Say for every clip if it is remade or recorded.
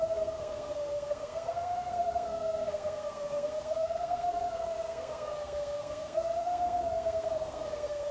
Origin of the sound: remade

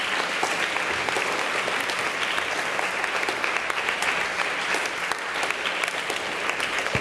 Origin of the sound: recorded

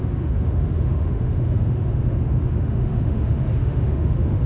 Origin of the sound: remade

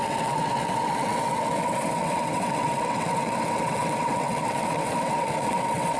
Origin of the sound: remade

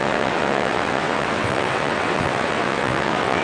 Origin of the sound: remade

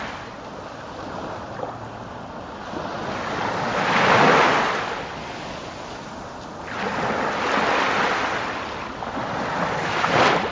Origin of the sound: recorded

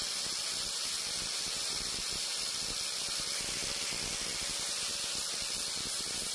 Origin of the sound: recorded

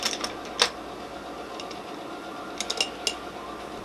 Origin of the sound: recorded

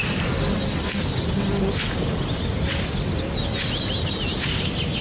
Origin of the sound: recorded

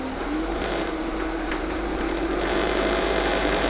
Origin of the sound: remade